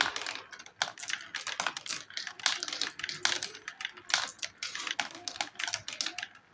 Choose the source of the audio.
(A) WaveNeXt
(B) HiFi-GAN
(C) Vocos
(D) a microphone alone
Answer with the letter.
D